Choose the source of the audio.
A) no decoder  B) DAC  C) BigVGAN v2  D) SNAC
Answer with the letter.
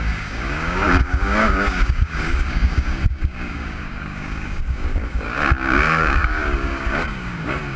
B